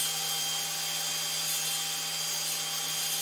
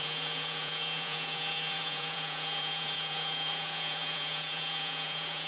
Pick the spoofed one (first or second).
second